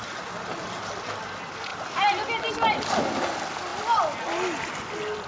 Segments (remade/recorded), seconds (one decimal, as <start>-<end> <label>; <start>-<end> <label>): 0.0-5.3 recorded